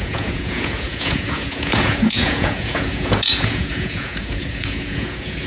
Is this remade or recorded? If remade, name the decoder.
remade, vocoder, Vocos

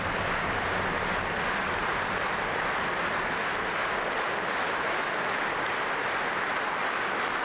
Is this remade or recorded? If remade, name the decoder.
recorded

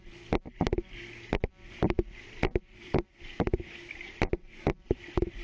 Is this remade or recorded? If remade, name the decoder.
recorded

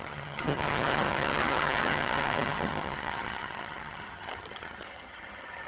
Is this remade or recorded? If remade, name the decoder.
remade, vocoder, HiFi-GAN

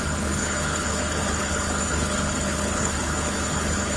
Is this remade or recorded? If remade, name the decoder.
remade, codec, HILCodec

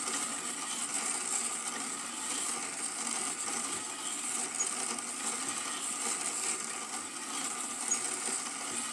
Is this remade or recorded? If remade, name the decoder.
recorded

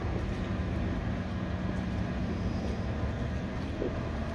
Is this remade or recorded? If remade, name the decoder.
recorded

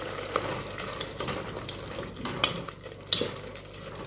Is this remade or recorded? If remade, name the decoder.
recorded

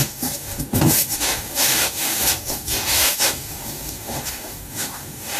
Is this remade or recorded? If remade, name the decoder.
remade, codec, DAC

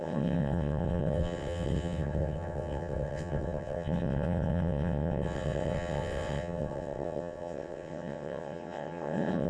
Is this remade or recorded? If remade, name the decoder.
remade, vocoder, WaveNeXt